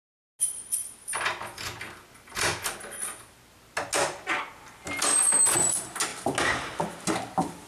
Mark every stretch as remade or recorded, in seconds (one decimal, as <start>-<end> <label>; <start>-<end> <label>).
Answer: 0.0-7.7 recorded